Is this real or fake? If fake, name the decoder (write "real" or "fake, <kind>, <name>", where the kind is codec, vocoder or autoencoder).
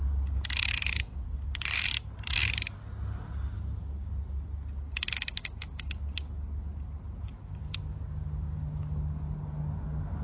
real